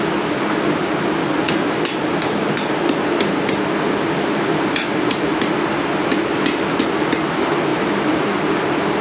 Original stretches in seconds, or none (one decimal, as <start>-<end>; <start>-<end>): 0.0-9.0